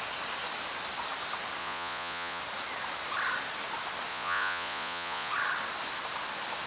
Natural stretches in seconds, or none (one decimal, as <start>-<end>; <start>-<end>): 0.0-1.6; 2.4-4.1; 5.3-6.7